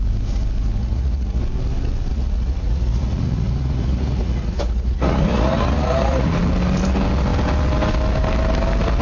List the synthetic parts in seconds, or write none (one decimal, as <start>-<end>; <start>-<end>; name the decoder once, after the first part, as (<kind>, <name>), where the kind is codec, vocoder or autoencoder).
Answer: 0.8-1.4 (vocoder, Vocos); 2.1-6.3